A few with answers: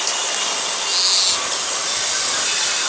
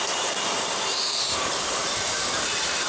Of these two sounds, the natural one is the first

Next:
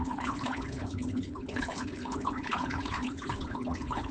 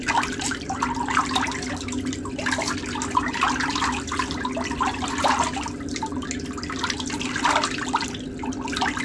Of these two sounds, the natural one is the second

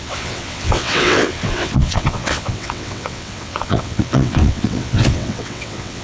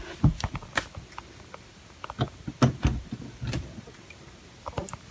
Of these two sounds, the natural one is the second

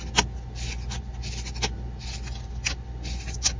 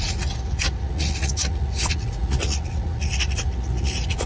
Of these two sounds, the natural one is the first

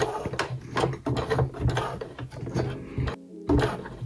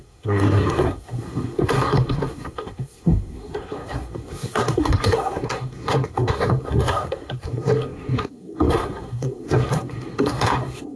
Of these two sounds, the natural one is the first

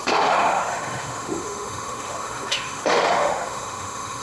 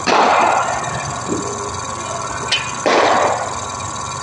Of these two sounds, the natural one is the second